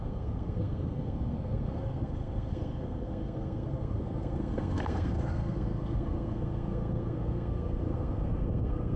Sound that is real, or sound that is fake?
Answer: fake